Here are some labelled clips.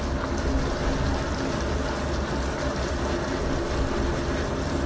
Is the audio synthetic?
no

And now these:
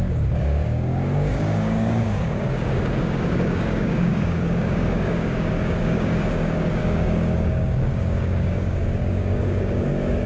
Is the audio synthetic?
yes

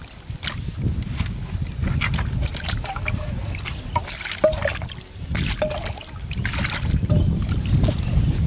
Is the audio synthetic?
no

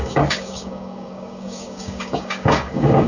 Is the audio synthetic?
yes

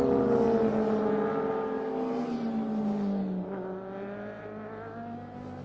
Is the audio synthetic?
no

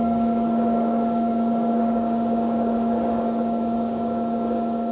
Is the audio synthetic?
yes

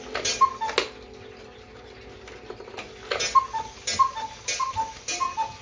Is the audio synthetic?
no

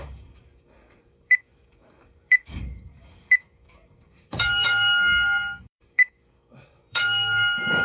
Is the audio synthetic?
yes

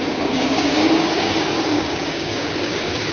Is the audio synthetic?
yes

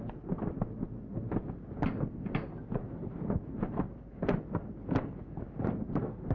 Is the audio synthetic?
no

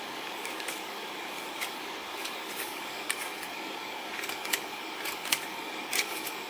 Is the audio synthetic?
yes